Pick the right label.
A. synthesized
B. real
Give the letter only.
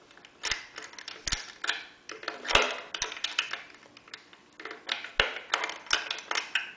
B